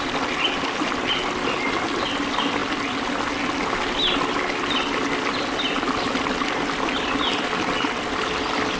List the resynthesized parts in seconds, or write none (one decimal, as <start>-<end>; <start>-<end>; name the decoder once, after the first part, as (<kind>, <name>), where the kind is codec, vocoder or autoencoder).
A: none